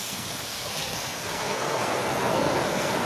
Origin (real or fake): fake